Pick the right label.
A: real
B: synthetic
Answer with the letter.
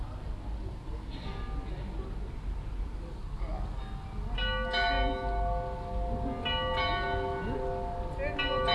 A